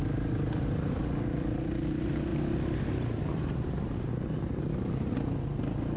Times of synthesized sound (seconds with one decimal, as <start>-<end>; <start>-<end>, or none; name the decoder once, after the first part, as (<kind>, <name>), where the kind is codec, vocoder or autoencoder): none

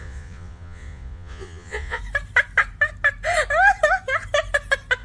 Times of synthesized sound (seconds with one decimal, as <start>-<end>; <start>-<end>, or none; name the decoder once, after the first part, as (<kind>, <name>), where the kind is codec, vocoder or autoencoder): 0.0-2.0 (vocoder, Vocos)

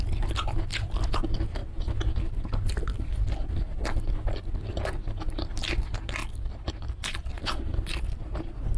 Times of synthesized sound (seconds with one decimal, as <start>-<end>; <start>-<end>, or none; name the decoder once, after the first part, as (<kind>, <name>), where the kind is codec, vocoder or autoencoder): none

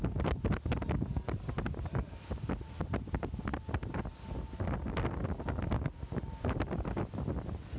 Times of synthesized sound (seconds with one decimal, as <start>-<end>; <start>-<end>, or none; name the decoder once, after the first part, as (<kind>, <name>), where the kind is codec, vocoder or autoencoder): none

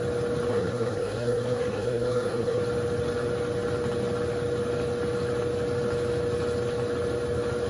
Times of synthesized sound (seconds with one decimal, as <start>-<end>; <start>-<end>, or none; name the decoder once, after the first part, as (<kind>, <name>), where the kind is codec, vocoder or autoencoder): 0.5-2.6 (codec, SNAC)

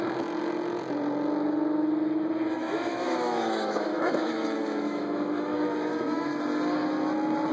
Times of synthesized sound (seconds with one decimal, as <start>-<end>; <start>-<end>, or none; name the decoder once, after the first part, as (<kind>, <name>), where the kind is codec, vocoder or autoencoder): 2.6-6.3 (autoencoder, DAC-VAE)

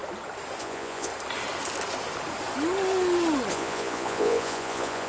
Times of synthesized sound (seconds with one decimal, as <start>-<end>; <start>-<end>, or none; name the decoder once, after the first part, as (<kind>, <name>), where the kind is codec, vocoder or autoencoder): 0.6-1.1 (vocoder, Vocos); 3.5-5.1